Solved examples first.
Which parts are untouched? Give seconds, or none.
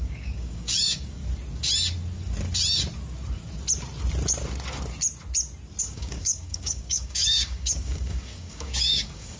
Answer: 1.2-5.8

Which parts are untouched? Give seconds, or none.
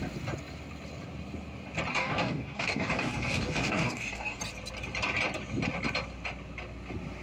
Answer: 0.0-1.9; 4.4-7.2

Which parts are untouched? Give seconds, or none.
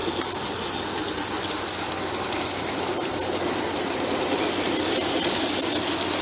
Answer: 0.0-6.2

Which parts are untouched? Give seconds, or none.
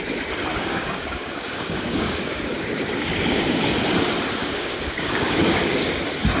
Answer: 0.0-0.5; 3.6-4.4; 6.0-6.4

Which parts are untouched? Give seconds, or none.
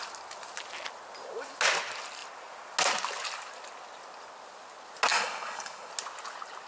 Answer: 0.0-5.1; 5.9-6.7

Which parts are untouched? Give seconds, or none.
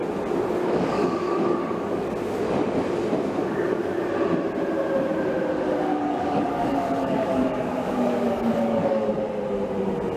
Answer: 0.0-0.6; 2.1-3.4; 4.0-5.9; 9.1-10.2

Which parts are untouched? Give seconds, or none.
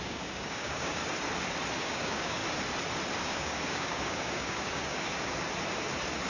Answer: 1.0-1.8; 2.4-3.2; 5.3-6.3